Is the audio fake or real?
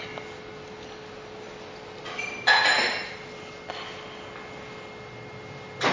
real